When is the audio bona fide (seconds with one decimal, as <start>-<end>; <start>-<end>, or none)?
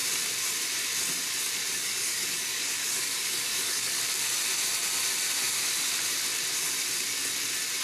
0.0-1.6; 4.0-7.8